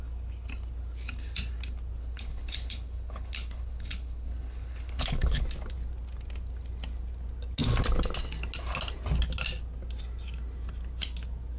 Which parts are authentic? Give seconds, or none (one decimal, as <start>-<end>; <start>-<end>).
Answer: 0.0-2.0; 5.4-11.6